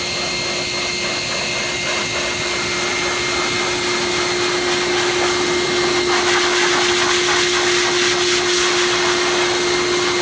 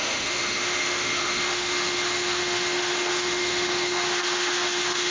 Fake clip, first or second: second